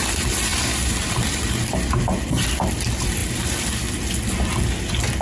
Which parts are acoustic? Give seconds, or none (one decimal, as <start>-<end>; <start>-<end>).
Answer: 0.0-0.5; 2.0-5.2